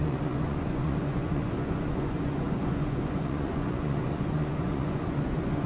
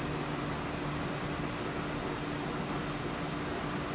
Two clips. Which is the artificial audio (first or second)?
first